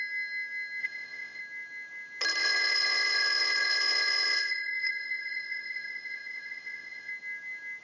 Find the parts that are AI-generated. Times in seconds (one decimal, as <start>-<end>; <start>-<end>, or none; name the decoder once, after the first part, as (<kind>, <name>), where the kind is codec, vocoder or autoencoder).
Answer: 0.8-1.4 (vocoder, Vocos); 2.4-7.1